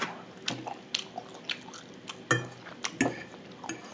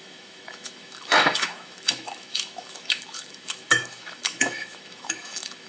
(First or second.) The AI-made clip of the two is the second